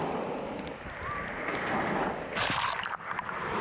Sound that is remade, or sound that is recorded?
recorded